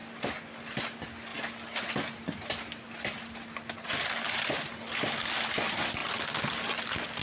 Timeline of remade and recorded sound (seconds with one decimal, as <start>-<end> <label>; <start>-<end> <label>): 0.0-7.2 recorded